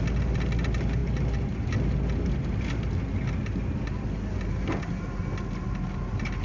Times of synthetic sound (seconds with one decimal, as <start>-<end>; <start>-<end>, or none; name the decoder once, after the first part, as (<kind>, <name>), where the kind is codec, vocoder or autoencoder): none